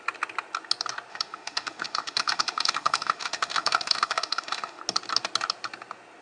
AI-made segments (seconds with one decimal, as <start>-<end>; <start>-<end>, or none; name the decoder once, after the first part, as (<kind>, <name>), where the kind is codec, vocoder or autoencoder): 1.1-4.8 (autoencoder, DAC-VAE)